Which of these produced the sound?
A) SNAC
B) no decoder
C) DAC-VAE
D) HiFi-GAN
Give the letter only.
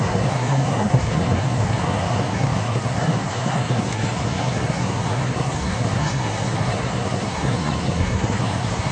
A